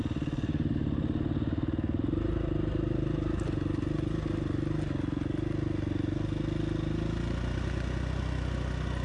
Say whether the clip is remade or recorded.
recorded